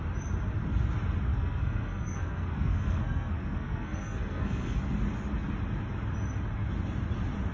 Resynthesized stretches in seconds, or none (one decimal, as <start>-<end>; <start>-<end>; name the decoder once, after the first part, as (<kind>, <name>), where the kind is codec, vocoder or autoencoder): 1.3-4.8 (codec, SNAC)